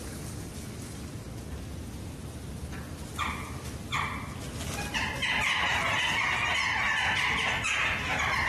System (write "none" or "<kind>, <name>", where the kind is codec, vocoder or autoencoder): none